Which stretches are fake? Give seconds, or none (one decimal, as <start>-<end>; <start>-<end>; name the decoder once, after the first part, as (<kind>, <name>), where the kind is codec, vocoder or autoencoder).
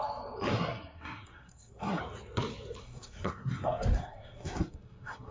0.5-2.0 (codec, SNAC); 2.8-5.3